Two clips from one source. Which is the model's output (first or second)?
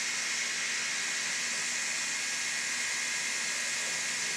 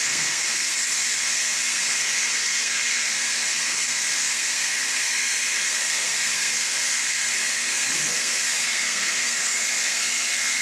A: second